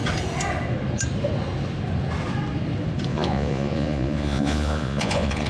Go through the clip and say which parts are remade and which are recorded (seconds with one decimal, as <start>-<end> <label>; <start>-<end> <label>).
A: 0.0-3.1 recorded; 3.1-5.5 remade